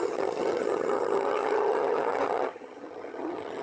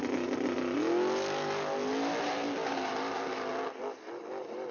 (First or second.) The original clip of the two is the second